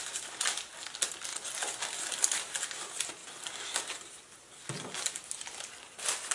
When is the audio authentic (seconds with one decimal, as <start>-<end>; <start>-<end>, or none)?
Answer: 0.0-6.3